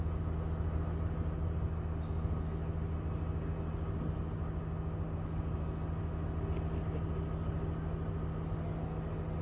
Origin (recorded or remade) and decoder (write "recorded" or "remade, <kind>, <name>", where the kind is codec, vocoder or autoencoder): recorded